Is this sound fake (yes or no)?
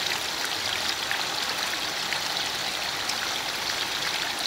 no